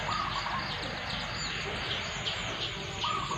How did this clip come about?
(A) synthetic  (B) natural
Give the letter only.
B